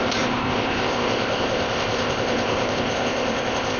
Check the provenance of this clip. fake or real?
fake